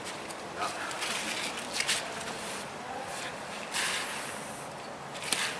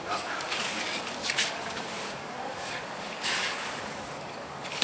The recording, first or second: first